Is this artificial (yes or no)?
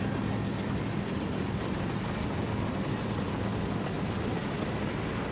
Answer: no